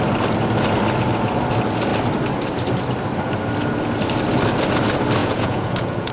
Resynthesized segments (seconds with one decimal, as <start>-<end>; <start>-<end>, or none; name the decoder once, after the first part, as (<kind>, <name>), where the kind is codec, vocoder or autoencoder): 5.2-6.1 (vocoder, Vocos)